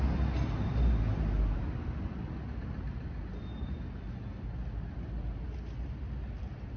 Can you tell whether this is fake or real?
real